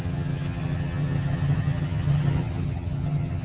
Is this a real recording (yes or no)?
no